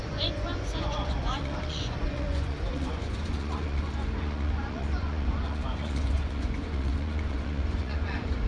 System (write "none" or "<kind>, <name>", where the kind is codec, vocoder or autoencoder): vocoder, Vocos